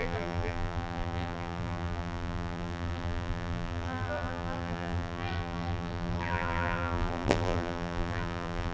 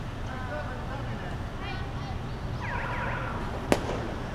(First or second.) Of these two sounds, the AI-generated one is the first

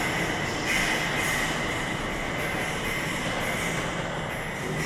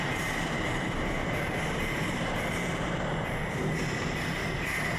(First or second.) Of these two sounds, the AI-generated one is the second